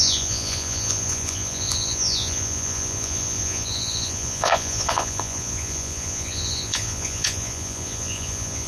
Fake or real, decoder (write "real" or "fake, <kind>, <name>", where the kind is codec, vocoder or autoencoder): fake, vocoder, Vocos